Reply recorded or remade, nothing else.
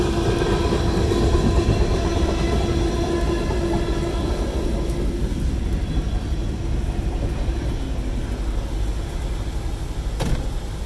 recorded